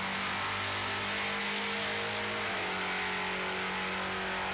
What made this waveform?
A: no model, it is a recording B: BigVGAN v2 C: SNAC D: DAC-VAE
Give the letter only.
A